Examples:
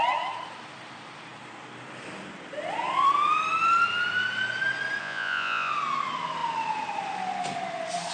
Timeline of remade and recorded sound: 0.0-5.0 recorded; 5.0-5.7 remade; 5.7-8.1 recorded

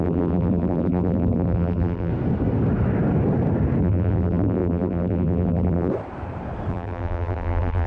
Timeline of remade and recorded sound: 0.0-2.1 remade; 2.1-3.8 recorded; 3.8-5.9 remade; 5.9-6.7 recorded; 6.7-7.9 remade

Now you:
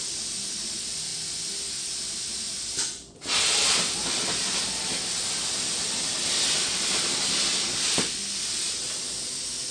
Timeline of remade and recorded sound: 0.0-9.7 recorded

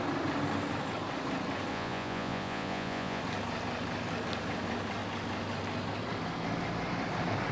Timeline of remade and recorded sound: 0.0-1.7 recorded; 1.7-3.2 remade; 3.2-7.5 recorded

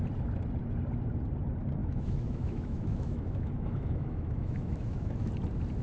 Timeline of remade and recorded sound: 0.0-1.8 recorded; 1.8-5.3 remade; 5.3-5.8 recorded

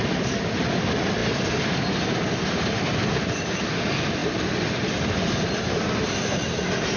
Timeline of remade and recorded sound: 0.0-7.0 recorded